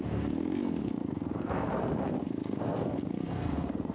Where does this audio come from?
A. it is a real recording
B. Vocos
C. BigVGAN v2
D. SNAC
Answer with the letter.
D